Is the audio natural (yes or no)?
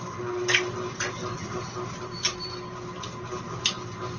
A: yes